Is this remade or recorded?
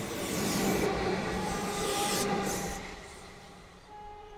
remade